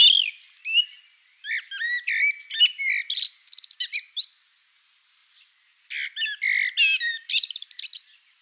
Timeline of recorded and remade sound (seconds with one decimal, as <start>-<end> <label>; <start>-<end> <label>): 0.0-8.4 recorded